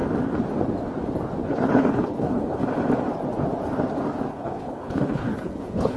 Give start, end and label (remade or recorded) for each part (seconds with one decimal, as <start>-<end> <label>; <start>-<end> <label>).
0.0-1.4 recorded; 1.4-2.6 remade; 2.6-4.3 recorded; 4.3-6.0 remade